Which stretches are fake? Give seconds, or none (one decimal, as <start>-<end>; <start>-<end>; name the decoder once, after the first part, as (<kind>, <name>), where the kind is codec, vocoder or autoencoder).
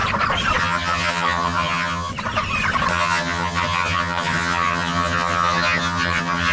0.6-2.1 (vocoder, HiFi-GAN); 2.9-6.5